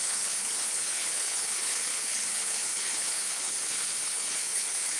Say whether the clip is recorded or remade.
remade